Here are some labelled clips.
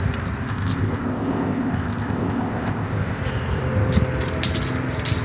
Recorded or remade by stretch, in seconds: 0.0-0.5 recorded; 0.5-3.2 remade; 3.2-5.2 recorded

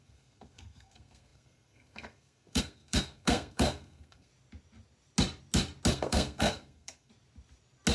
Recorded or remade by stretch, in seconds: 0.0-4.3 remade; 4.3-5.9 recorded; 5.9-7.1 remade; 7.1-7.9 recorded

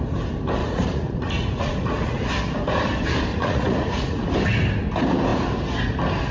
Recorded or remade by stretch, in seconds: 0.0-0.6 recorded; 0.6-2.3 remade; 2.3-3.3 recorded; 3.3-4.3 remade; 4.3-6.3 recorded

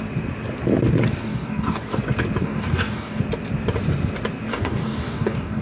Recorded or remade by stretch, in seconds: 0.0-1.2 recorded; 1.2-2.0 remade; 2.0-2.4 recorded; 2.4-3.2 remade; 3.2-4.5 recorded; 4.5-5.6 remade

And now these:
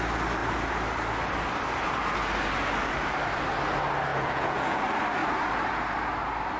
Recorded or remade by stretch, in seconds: 0.0-4.1 recorded; 4.1-4.8 remade; 4.8-6.6 recorded

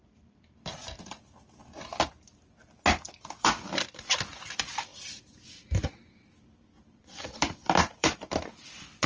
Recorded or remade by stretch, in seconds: 0.0-1.6 remade; 1.6-3.4 recorded; 3.4-9.1 remade